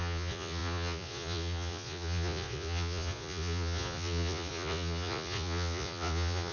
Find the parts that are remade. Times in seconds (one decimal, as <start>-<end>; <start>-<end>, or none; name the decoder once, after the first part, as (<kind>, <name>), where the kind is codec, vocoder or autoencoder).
0.0-6.5 (vocoder, Vocos)